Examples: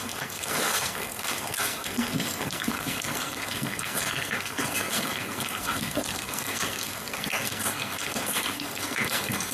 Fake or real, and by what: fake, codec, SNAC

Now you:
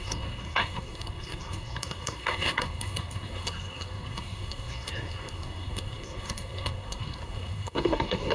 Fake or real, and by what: fake, codec, SNAC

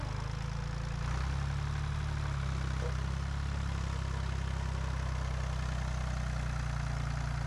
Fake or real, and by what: real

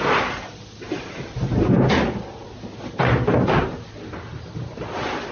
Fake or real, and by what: real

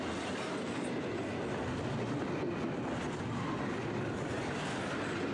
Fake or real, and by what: real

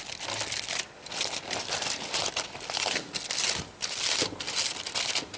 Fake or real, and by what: real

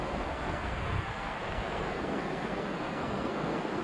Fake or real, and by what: fake, codec, SNAC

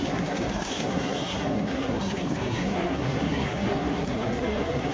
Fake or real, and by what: fake, codec, SNAC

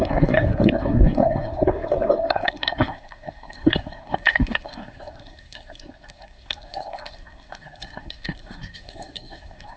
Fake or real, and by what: fake, codec, SNAC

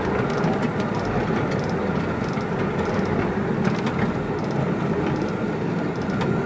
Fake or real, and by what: real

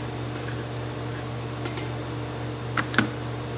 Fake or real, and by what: real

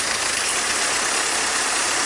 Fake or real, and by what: real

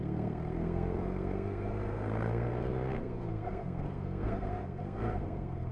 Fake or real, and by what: fake, codec, SNAC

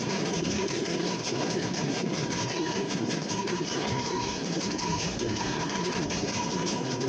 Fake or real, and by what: fake, codec, SNAC